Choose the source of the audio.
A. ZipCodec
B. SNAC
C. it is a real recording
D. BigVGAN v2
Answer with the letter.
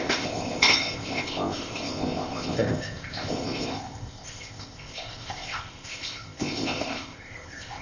A